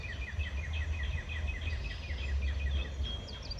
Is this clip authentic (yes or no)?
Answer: yes